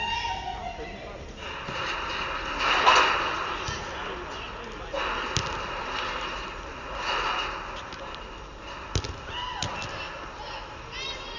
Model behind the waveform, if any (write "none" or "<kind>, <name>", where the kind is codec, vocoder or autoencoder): none